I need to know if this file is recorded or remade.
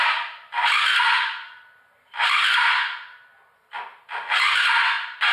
recorded